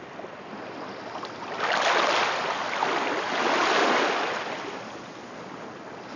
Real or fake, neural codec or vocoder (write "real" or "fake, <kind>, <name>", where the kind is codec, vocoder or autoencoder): real